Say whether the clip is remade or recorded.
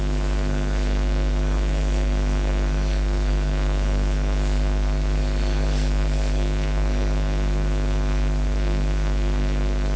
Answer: remade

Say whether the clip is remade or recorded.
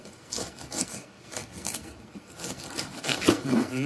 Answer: remade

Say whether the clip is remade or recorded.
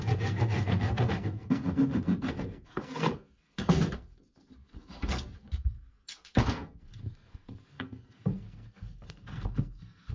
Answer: remade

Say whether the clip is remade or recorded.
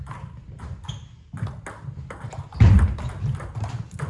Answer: recorded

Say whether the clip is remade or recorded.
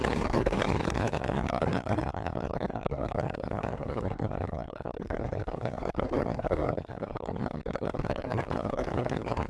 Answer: remade